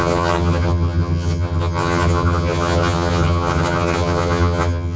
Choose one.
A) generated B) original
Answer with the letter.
A